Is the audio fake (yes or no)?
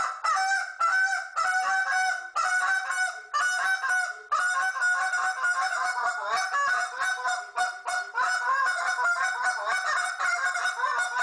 no